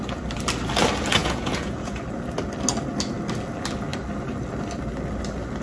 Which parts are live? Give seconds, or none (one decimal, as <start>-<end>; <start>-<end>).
0.0-1.2; 2.0-5.6